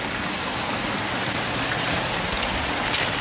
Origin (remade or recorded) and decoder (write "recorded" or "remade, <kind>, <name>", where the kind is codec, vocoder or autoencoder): recorded